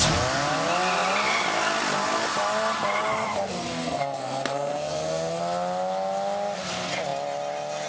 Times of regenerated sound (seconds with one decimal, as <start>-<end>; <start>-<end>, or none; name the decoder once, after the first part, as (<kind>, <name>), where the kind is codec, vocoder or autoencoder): 3.8-5.4 (codec, SNAC)